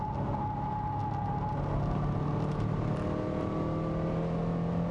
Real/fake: real